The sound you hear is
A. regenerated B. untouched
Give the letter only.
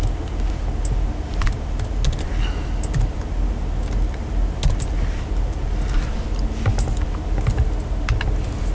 B